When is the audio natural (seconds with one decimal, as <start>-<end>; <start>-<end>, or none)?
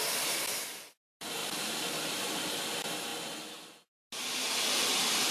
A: 0.0-1.4; 2.6-5.3